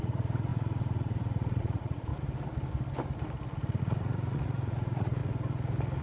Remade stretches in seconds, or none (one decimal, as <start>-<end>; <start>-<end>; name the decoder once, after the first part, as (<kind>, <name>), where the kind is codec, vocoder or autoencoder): 0.0-2.1 (vocoder, Vocos); 3.8-5.2